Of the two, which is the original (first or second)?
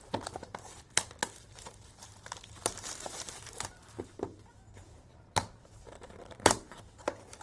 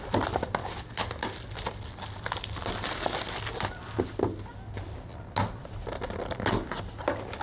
second